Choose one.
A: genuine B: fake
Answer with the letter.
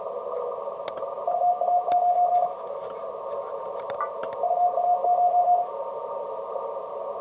A